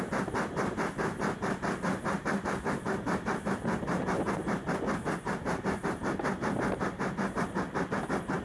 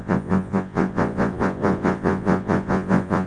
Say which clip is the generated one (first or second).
second